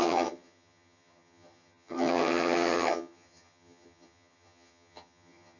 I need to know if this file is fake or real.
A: fake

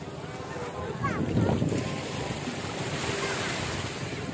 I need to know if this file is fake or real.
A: real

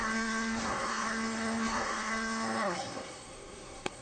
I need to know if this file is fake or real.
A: fake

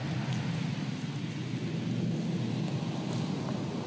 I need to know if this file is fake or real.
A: real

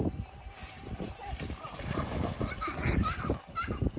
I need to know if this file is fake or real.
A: real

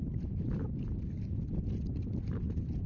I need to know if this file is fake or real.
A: real